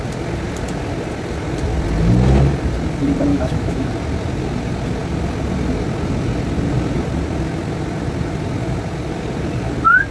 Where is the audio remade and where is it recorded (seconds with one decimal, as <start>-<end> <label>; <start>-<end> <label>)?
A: 0.0-3.3 recorded; 3.3-3.9 remade; 3.9-10.1 recorded